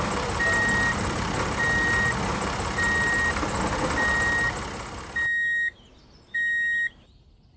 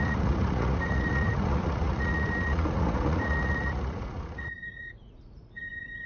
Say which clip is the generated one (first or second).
second